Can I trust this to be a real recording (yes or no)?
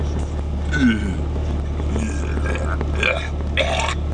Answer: yes